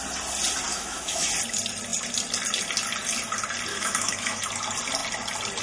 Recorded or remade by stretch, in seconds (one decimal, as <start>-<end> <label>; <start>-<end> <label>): 0.0-0.7 recorded; 0.7-1.3 remade; 1.3-3.7 recorded; 3.7-4.4 remade; 4.4-5.6 recorded